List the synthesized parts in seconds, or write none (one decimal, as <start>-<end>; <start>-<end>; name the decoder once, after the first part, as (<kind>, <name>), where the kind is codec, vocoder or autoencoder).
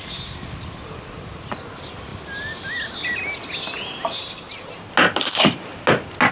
none